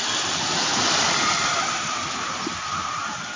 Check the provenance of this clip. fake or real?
real